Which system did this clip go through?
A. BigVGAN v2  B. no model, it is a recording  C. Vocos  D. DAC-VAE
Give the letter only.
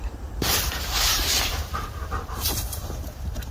A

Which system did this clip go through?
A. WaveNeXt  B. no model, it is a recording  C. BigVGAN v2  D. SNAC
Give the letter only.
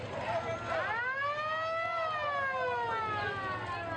B